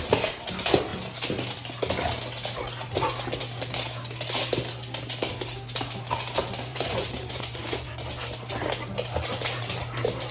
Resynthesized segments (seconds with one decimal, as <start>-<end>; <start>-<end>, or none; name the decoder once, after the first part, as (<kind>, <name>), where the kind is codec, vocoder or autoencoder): 6.7-7.9 (vocoder, Vocos)